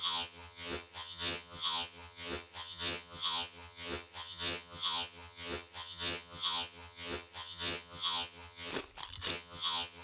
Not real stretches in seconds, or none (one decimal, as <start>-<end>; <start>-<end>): 0.0-8.7; 9.3-10.0